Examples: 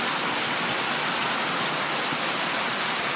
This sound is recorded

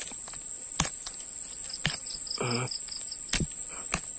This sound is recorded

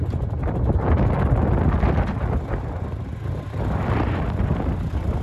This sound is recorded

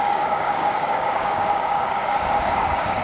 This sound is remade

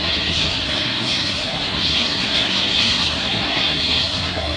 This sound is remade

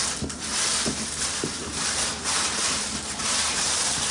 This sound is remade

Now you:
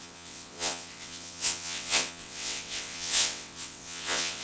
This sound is remade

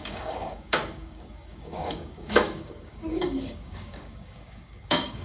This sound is remade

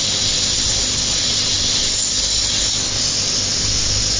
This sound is recorded